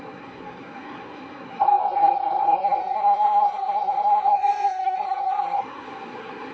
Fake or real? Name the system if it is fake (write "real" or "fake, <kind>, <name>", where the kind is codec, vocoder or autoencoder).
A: fake, codec, SNAC